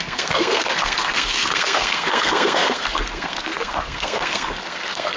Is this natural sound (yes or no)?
no